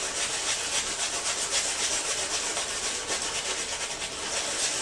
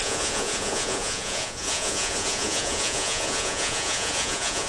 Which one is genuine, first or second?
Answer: first